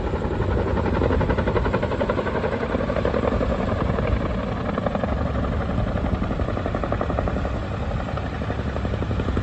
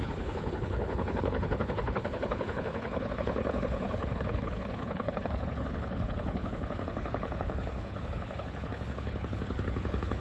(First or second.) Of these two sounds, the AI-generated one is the second